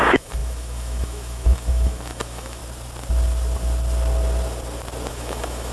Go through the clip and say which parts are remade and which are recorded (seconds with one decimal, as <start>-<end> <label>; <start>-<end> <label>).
0.0-2.6 remade; 2.6-5.1 recorded; 5.1-5.7 remade